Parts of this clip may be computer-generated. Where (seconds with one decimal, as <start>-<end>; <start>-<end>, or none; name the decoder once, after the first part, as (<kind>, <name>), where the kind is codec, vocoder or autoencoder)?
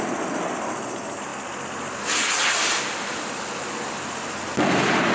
none